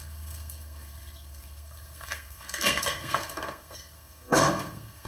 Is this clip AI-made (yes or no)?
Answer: yes